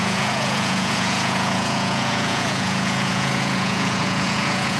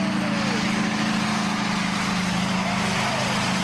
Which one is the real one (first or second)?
second